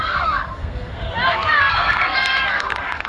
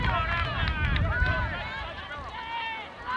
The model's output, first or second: first